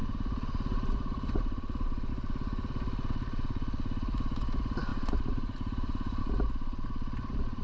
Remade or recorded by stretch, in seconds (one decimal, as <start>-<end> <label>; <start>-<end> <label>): 0.0-2.1 remade; 2.1-4.9 recorded; 4.9-6.2 remade; 6.2-7.6 recorded